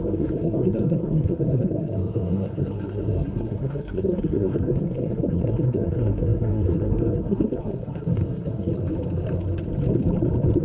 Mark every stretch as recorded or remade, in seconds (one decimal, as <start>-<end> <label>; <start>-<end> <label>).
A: 0.0-8.7 remade; 8.7-10.6 recorded